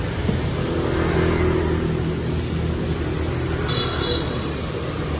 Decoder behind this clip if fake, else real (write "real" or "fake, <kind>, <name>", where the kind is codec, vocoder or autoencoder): real